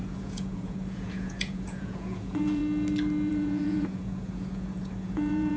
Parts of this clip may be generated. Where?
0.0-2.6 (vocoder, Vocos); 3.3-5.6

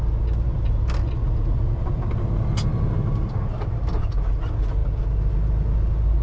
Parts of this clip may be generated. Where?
none

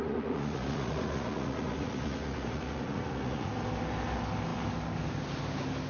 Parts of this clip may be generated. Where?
0.0-3.5 (vocoder, Vocos)

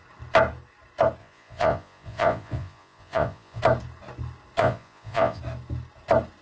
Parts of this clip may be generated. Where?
1.2-3.6 (vocoder, Vocos); 4.6-5.4

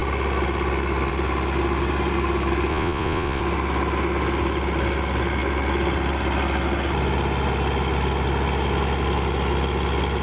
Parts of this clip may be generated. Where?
2.7-3.4 (vocoder, Vocos)